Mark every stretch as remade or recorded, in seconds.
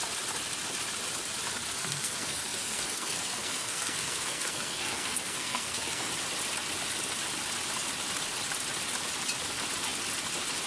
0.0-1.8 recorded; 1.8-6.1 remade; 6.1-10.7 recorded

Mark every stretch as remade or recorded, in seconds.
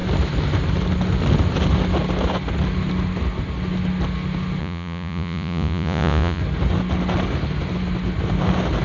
0.0-4.6 recorded; 4.6-6.4 remade; 6.4-8.8 recorded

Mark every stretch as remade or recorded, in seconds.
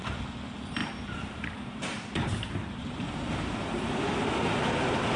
0.0-0.8 recorded; 0.8-3.9 remade; 3.9-5.2 recorded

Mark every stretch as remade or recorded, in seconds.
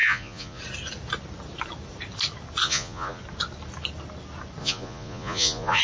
0.0-0.6 remade; 0.6-2.6 recorded; 2.6-3.2 remade; 3.2-4.6 recorded; 4.6-5.8 remade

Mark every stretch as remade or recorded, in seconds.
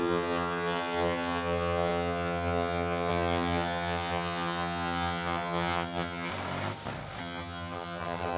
0.0-6.3 remade; 6.3-7.2 recorded; 7.2-8.4 remade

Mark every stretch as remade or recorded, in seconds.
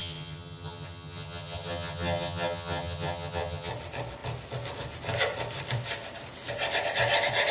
0.0-3.7 remade; 3.7-7.5 recorded